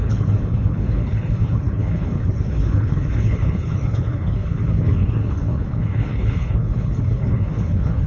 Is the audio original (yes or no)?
no